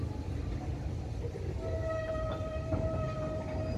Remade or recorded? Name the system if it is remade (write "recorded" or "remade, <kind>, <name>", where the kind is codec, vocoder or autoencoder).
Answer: recorded